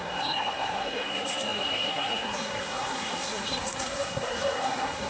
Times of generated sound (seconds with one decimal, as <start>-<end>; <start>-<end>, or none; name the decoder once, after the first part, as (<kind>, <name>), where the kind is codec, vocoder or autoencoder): 0.0-5.1 (codec, SNAC)